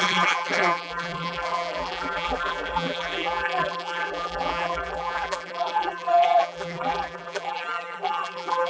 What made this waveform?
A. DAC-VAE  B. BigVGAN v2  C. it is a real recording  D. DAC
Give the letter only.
B